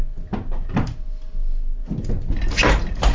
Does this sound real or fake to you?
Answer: real